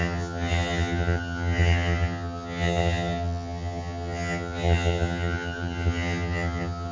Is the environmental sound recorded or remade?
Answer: remade